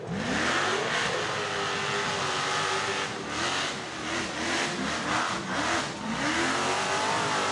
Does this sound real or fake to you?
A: real